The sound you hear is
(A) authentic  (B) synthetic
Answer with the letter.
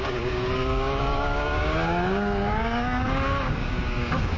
B